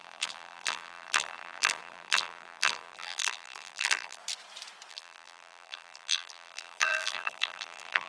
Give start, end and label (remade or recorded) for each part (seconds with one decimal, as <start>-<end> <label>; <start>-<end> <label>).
0.0-4.2 remade; 4.2-4.9 recorded; 4.9-8.1 remade